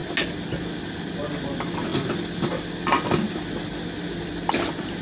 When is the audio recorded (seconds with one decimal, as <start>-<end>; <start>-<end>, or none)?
0.0-5.0